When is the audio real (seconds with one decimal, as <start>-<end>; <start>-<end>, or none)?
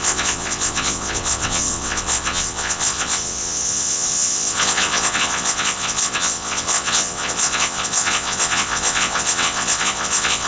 none